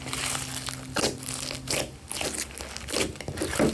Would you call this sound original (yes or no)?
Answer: yes